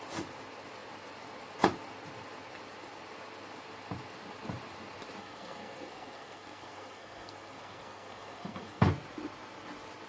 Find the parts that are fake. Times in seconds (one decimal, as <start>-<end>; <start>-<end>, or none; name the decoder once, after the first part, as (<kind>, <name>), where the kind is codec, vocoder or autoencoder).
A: 5.2-8.9 (codec, SNAC)